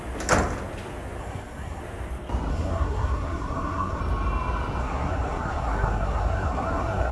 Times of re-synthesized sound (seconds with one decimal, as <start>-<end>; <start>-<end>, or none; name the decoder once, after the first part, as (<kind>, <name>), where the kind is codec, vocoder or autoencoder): 1.2-1.8 (codec, SNAC); 2.5-4.0; 4.8-7.1